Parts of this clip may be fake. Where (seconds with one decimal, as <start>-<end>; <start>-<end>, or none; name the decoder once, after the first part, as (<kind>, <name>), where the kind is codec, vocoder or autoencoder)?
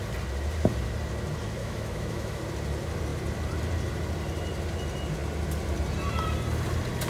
1.6-2.4 (autoencoder, DAC-VAE)